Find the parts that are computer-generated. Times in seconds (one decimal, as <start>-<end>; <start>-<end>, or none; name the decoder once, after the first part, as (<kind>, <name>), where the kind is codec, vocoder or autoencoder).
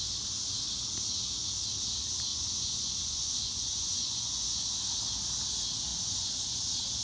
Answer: 2.3-4.7 (vocoder, Vocos); 5.9-6.6